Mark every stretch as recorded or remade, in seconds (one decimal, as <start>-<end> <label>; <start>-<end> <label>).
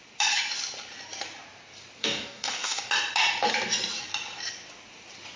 0.0-2.0 recorded; 2.0-2.9 remade; 2.9-5.4 recorded